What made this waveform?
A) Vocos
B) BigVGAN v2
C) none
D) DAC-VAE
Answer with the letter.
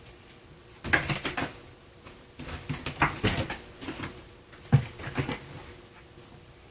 C